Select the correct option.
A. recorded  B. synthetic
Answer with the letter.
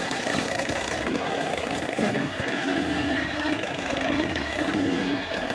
B